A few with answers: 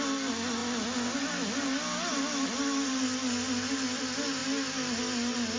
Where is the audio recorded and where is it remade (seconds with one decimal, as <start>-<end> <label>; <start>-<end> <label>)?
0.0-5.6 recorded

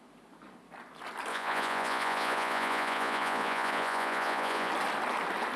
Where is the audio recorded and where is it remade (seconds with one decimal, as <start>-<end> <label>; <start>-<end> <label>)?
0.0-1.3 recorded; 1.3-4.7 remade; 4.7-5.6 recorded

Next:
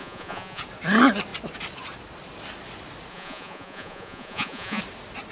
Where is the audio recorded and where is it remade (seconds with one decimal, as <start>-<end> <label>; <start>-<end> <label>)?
0.0-0.6 remade; 0.6-3.1 recorded; 3.1-4.8 remade; 4.8-5.3 recorded